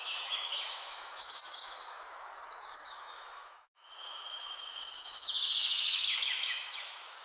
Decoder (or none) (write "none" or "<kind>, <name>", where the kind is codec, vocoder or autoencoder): autoencoder, DAC-VAE